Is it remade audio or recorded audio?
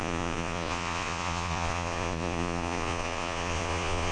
remade